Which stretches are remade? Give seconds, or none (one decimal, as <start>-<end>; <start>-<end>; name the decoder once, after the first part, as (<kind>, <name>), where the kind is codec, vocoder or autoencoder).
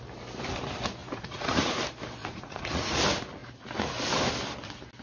1.0-1.8 (vocoder, Vocos); 2.2-3.0